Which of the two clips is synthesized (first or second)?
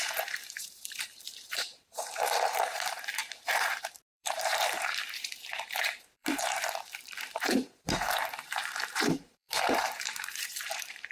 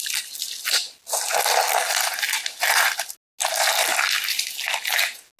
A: first